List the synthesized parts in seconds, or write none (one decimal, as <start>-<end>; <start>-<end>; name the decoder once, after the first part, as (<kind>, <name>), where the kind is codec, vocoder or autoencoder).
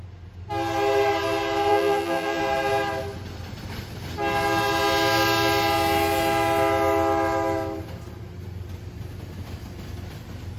1.7-2.4 (vocoder, BigVGAN v2)